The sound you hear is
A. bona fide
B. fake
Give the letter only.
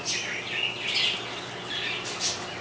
A